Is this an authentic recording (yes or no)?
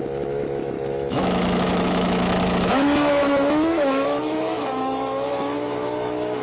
no